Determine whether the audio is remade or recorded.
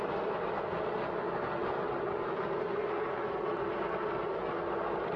recorded